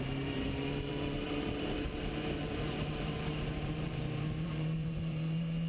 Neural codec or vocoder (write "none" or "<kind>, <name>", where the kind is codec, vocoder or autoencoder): vocoder, BigVGAN v2